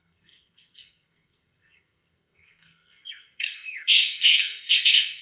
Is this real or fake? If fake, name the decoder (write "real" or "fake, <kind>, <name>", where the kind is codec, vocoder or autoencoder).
fake, codec, SNAC